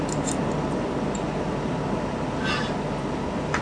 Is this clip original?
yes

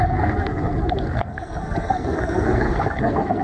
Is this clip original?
no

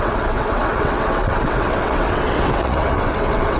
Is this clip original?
no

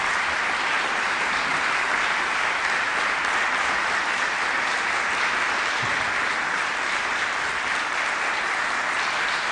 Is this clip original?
no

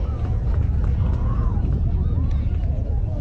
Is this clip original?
no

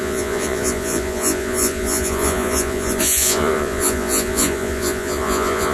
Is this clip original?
no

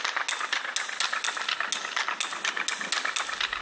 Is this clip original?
yes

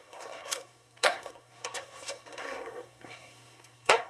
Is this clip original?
no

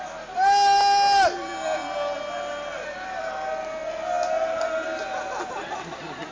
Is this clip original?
yes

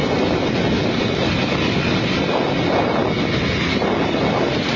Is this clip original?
yes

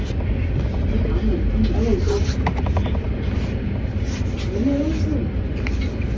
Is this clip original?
yes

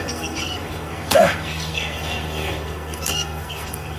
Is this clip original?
no